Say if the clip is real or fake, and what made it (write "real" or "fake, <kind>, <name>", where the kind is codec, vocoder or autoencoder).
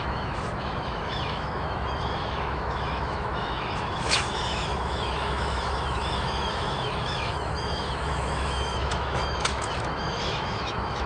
fake, autoencoder, DAC-VAE